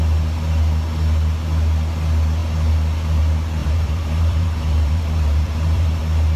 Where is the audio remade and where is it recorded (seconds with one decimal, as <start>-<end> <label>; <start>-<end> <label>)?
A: 0.0-3.6 recorded; 3.6-6.0 remade; 6.0-6.4 recorded